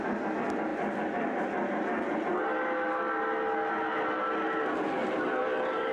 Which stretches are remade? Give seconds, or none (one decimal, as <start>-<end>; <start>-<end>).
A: 5.0-5.9